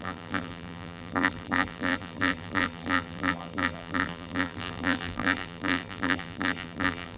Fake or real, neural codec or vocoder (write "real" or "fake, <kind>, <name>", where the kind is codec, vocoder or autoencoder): fake, vocoder, BigVGAN v2